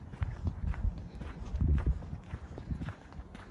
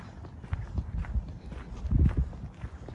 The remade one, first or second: first